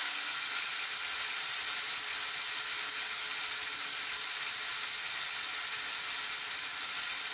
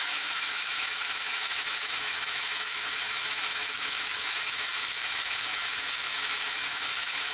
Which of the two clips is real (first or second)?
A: first